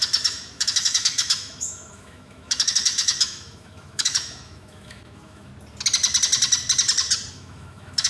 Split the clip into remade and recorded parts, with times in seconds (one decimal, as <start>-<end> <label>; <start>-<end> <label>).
0.0-5.5 remade; 5.5-7.3 recorded; 7.3-8.1 remade